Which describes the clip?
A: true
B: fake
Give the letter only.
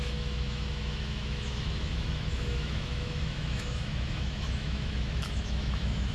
B